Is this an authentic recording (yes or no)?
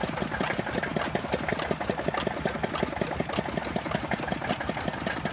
yes